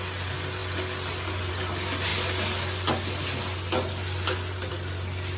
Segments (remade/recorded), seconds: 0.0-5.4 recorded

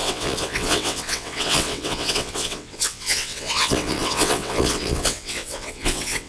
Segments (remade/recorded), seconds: 0.0-6.3 remade

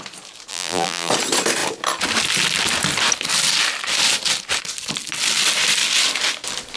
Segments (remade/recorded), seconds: 0.0-0.5 recorded; 0.5-1.1 remade; 1.1-6.8 recorded